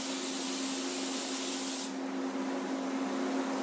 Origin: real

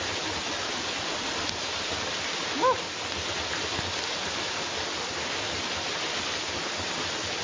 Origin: real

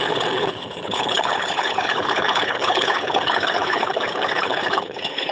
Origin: fake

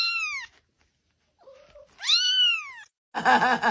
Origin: real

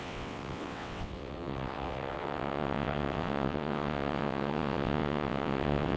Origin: fake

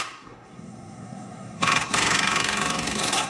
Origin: fake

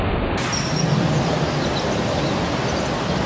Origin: real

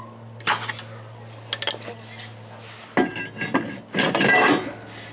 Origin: real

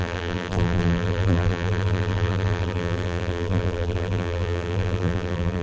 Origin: fake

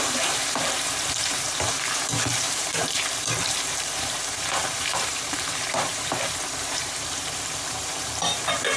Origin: fake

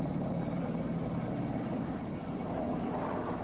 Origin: fake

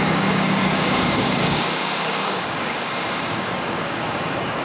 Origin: fake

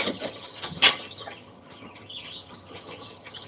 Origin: fake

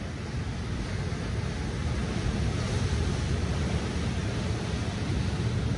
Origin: real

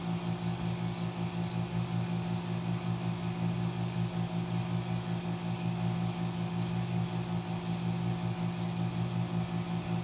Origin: real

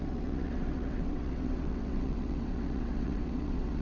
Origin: fake